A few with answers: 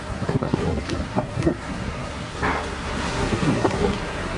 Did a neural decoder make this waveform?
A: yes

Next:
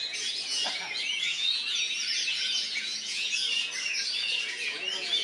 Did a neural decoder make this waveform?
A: yes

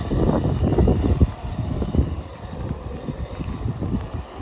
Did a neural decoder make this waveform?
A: no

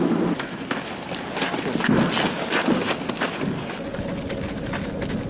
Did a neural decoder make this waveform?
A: no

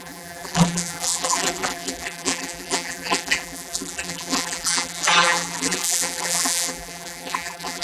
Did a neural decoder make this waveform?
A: yes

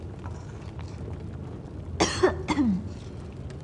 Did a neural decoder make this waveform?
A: no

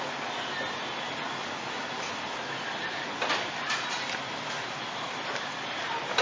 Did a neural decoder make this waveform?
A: no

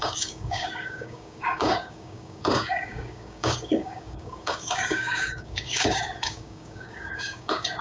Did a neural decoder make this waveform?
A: yes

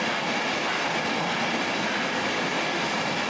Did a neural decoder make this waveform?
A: no